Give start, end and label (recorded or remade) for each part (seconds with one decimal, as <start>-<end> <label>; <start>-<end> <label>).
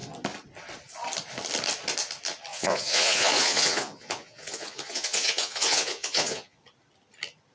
0.0-2.5 recorded; 2.5-6.6 remade; 6.6-7.5 recorded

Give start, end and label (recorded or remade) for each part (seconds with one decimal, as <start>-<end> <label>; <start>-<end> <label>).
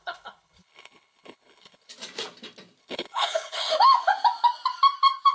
0.0-1.9 remade; 1.9-2.8 recorded; 2.8-3.7 remade; 3.7-5.3 recorded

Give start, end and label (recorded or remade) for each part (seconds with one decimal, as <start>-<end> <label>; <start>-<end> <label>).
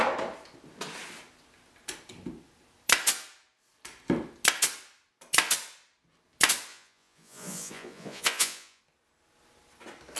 0.0-6.7 recorded; 6.7-8.8 remade; 8.8-10.2 recorded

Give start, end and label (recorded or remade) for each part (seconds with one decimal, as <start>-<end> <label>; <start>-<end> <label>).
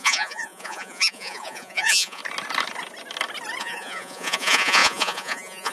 0.0-2.2 remade; 2.2-3.6 recorded; 3.6-5.7 remade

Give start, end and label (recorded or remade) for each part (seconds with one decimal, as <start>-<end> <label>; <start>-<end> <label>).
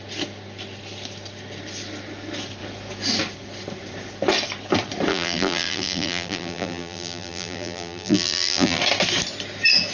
0.0-5.1 recorded; 5.1-8.8 remade; 8.8-9.9 recorded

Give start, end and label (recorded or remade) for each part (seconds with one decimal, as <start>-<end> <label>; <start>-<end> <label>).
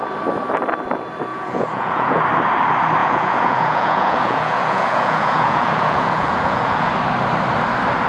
0.0-1.3 recorded; 1.3-2.2 remade; 2.2-3.0 recorded; 3.0-6.9 remade; 6.9-8.1 recorded